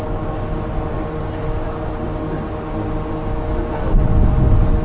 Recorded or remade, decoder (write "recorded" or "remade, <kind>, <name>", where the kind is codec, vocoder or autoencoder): recorded